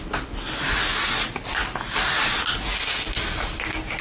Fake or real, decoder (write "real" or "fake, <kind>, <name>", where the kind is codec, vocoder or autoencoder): real